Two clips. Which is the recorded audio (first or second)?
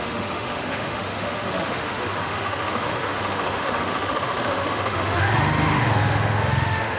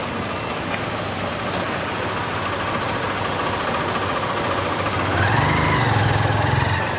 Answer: second